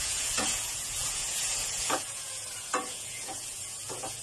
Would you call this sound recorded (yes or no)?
no